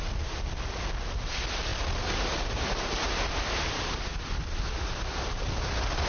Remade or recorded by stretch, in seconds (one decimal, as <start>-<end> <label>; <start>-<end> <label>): 0.0-6.1 recorded